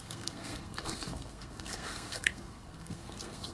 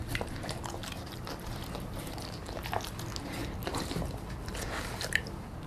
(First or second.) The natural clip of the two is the second